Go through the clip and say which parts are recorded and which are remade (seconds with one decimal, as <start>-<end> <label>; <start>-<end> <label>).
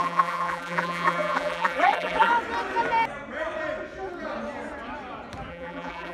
0.0-2.3 remade; 2.3-5.5 recorded; 5.5-6.1 remade